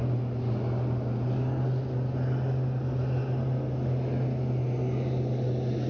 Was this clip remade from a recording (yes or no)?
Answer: no